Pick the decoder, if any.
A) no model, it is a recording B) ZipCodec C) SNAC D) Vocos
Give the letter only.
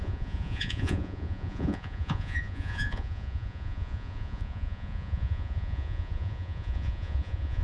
D